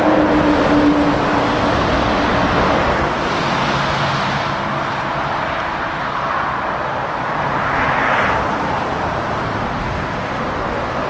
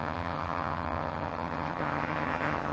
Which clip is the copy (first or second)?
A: second